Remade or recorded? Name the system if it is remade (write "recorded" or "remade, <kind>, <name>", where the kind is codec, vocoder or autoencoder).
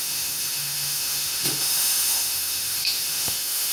remade, autoencoder, DAC-VAE